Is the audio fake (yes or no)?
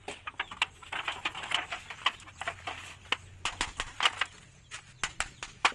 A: no